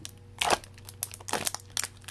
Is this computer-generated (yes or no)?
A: no